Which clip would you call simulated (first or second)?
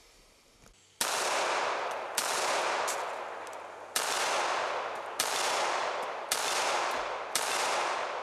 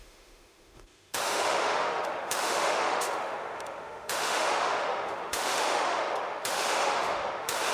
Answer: second